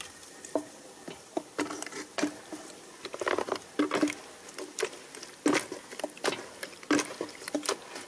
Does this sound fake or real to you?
real